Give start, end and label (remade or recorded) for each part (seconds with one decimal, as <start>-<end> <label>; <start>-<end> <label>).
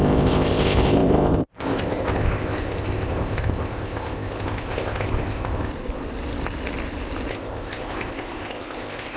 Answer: 0.0-5.7 remade; 5.7-7.3 recorded; 7.3-9.2 remade